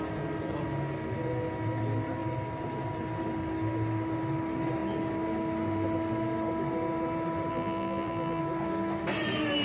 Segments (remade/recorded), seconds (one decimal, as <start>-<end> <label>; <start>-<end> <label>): 0.0-7.5 recorded; 7.5-8.4 remade; 8.4-9.6 recorded